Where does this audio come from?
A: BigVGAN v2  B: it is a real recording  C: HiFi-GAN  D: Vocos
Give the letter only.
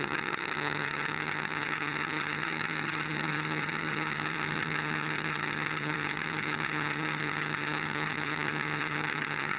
C